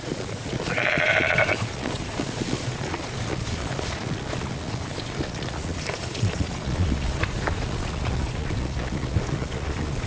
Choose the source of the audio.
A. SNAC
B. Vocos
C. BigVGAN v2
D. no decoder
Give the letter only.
B